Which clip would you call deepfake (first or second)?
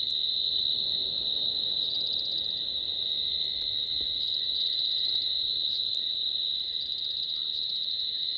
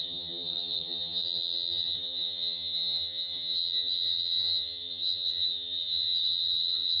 second